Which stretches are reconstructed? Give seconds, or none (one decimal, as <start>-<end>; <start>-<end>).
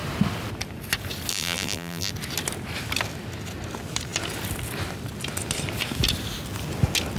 1.3-2.1